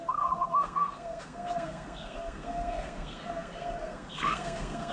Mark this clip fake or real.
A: fake